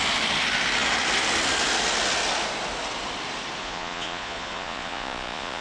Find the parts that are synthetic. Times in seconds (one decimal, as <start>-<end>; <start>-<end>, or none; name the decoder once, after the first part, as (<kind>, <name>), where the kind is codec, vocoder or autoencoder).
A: 3.6-5.6 (vocoder, Vocos)